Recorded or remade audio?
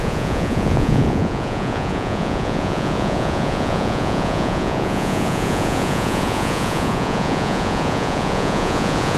remade